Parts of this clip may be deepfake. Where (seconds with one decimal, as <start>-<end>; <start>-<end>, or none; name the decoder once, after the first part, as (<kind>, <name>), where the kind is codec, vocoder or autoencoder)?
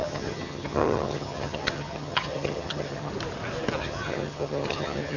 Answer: 0.0-3.1 (vocoder, HiFi-GAN); 3.8-5.2